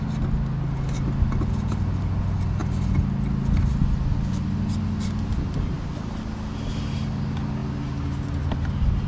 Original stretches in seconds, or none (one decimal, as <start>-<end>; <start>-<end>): 0.0-9.1